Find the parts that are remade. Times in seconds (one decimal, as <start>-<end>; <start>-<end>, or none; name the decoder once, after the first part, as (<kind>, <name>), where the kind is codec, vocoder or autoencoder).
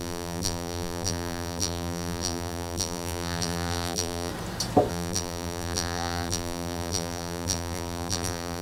0.0-4.3 (vocoder, BigVGAN v2); 4.9-8.6